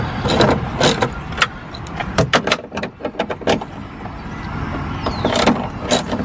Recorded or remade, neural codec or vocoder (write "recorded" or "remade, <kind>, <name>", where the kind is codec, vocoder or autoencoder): recorded